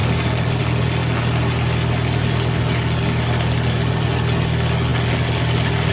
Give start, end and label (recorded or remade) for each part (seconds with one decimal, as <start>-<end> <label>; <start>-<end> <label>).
0.0-0.6 remade; 0.6-5.9 recorded